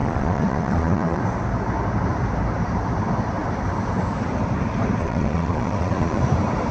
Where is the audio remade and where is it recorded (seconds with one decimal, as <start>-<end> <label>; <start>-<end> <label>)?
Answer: 0.0-1.2 remade; 1.2-5.0 recorded; 5.0-6.2 remade; 6.2-6.7 recorded